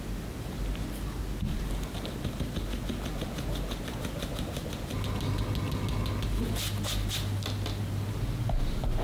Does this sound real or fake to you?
real